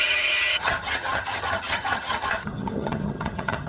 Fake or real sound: fake